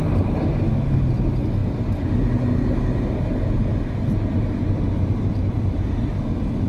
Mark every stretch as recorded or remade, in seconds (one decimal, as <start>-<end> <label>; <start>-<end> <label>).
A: 0.0-6.7 recorded